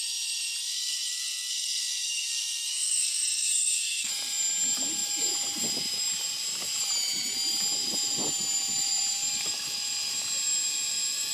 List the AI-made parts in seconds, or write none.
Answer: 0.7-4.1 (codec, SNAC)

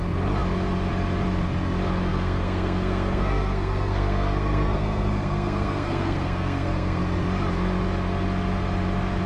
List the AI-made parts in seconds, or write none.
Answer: 2.1-7.0 (codec, SNAC)

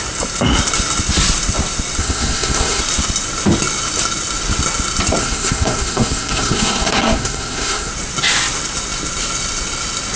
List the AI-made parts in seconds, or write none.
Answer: 2.0-2.8 (codec, SNAC); 5.2-7.9